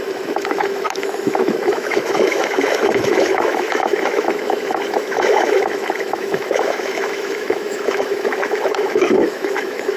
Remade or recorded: remade